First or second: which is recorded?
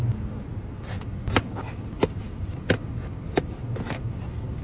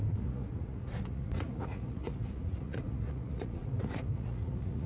first